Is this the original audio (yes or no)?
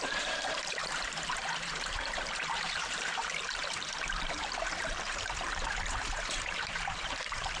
no